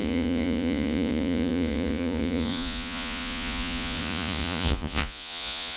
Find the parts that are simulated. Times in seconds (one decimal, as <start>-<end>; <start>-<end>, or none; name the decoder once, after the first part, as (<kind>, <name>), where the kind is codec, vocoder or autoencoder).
0.0-5.8 (vocoder, Vocos)